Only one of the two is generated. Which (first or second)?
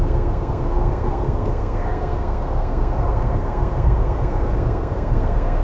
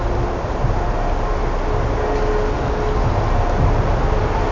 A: first